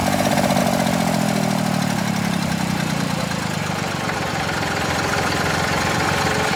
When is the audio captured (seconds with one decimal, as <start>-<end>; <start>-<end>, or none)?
0.6-2.0; 3.2-3.6; 4.3-6.6